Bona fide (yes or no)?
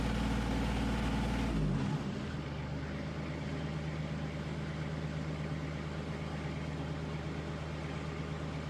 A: yes